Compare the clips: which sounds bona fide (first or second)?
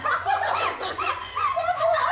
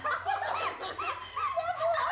second